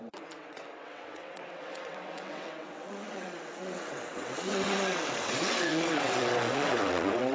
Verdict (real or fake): fake